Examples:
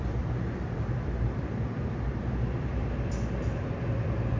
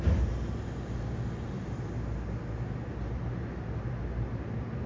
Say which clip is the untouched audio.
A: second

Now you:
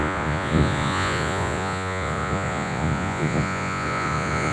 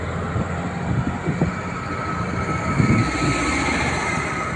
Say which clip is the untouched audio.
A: second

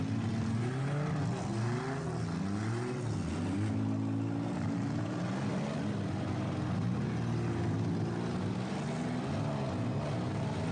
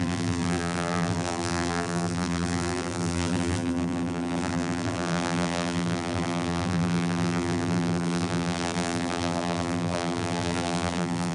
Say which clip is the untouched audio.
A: first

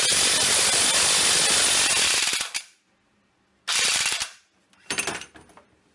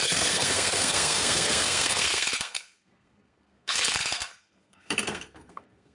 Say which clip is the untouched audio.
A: first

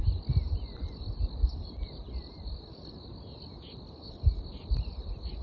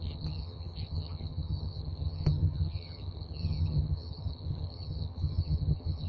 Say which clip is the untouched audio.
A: first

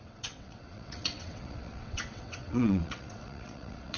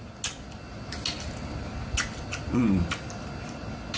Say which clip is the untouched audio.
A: second